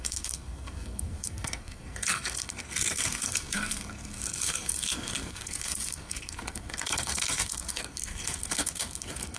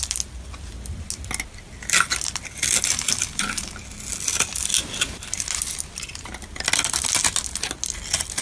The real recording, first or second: second